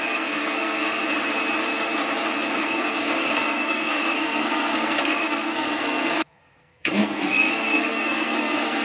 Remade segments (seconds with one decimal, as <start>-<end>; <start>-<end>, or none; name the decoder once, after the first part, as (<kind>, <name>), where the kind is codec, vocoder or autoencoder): 0.0-1.0 (codec, SNAC); 2.5-8.8